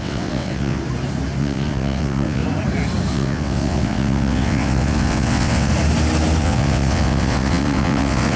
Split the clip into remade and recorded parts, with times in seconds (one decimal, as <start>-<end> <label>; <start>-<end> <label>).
0.0-0.8 remade; 0.8-1.4 recorded; 1.4-2.4 remade; 2.4-3.1 recorded; 3.1-5.7 remade; 5.7-6.4 recorded; 6.4-8.4 remade